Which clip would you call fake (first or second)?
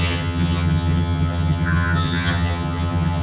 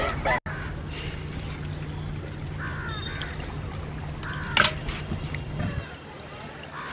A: first